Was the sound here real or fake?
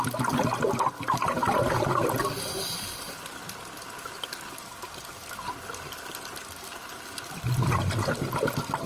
real